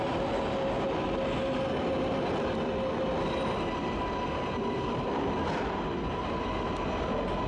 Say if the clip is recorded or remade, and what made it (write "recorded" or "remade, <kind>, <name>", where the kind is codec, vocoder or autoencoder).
recorded